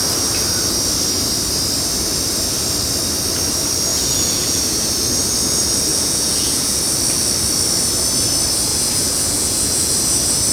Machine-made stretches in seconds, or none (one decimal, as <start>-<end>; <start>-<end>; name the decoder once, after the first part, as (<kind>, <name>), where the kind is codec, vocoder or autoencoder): 3.9-4.6 (vocoder, Vocos); 5.9-6.8; 8.7-9.9